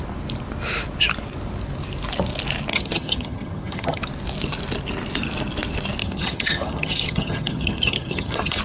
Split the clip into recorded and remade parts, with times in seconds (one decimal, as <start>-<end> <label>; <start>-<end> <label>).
0.0-2.7 recorded; 2.7-4.0 remade; 4.0-6.0 recorded; 6.0-8.6 remade